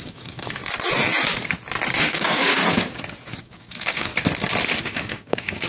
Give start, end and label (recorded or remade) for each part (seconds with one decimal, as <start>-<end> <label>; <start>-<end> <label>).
0.0-0.6 remade; 0.6-2.0 recorded; 2.0-2.6 remade; 2.6-3.4 recorded; 3.4-4.1 remade; 4.1-4.8 recorded; 4.8-5.7 remade